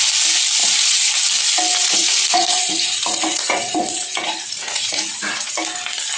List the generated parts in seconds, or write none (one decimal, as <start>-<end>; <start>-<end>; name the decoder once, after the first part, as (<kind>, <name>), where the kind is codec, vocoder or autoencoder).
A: 0.6-1.1 (vocoder, Vocos); 1.8-5.5